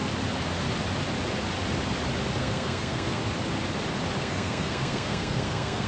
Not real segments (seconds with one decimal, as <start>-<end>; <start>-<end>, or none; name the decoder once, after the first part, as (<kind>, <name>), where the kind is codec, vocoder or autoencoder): 2.4-3.2 (codec, SNAC); 4.2-5.9

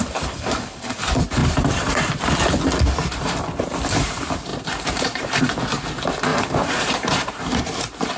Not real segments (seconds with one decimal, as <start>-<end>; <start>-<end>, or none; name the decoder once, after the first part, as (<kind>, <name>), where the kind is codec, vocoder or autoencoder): 1.4-2.3 (vocoder, BigVGAN v2); 4.5-5.4; 6.3-7.6

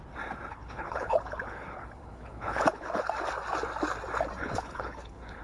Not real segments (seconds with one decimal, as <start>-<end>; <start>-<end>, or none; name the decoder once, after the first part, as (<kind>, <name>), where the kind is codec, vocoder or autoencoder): 0.5-3.0 (codec, HILCodec); 4.4-5.4

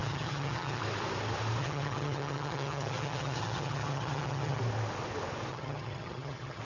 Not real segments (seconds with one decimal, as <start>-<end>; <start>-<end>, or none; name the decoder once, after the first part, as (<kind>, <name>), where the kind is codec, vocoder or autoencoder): 0.0-0.8 (vocoder, HiFi-GAN); 1.6-4.6; 5.5-6.6

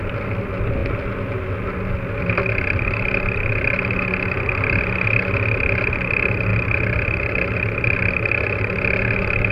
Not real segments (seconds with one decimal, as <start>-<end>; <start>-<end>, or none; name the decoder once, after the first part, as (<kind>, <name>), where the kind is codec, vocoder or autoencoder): none

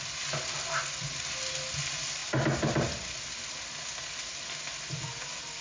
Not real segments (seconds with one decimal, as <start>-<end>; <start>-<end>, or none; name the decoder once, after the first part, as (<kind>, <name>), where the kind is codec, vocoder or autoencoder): none